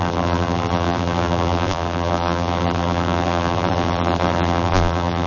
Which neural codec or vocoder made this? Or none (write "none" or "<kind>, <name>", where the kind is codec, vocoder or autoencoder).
vocoder, BigVGAN v2